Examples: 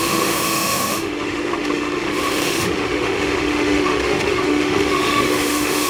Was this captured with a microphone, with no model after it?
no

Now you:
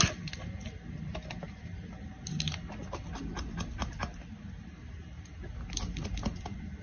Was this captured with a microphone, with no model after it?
yes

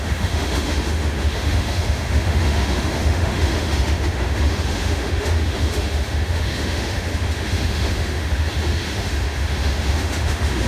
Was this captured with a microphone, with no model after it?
no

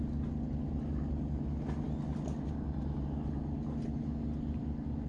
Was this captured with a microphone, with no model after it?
yes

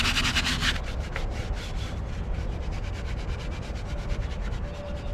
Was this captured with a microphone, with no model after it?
yes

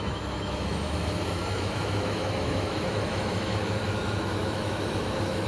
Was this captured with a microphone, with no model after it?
no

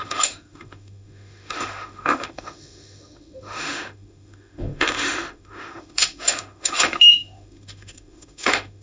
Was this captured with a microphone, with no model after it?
no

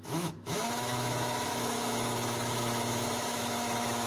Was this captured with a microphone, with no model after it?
no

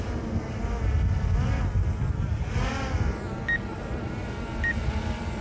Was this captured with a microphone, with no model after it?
yes